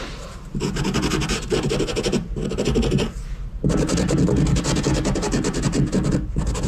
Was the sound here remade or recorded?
recorded